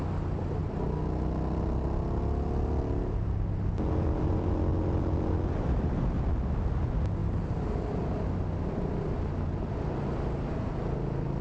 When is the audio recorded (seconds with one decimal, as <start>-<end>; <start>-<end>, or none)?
0.0-11.4